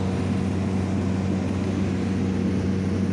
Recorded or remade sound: recorded